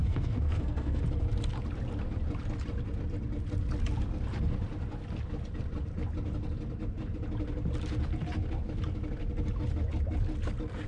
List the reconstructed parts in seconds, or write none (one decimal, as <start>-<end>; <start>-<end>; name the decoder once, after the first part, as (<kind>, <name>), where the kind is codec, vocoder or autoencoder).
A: 0.0-1.0 (codec, SNAC)